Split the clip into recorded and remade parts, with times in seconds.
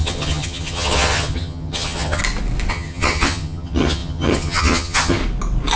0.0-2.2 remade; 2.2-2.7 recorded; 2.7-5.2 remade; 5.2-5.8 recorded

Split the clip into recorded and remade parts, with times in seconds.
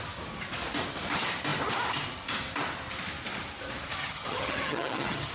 0.0-4.0 recorded; 4.0-5.3 remade